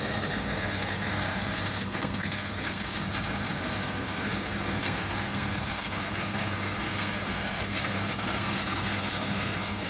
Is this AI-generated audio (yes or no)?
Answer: yes